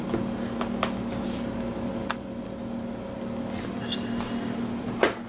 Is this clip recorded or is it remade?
recorded